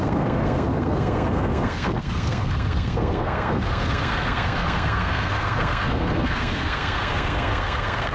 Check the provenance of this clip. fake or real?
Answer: fake